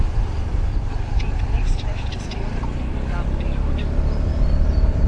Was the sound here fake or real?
fake